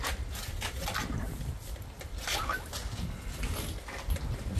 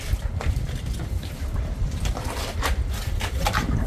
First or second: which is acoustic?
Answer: first